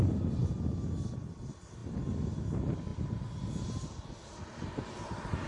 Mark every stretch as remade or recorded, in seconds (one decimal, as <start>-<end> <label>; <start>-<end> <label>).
0.0-5.5 recorded